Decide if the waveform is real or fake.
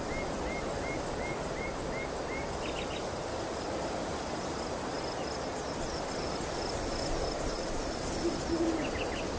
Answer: real